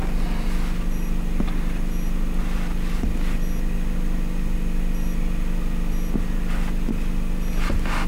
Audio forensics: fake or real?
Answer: real